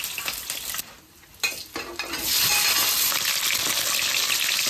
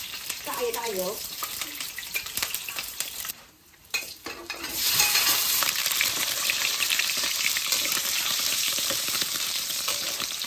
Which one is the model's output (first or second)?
second